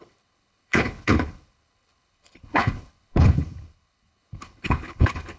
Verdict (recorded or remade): remade